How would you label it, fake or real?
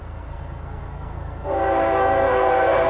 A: fake